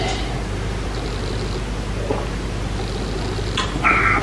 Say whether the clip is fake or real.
real